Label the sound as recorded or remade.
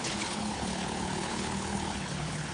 remade